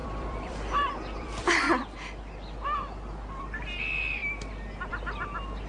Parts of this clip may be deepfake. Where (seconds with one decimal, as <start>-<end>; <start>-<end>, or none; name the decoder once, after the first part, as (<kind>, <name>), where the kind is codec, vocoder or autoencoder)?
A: 0.0-3.4 (vocoder, BigVGAN v2); 4.2-4.9